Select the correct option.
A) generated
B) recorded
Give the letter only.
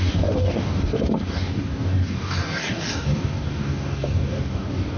A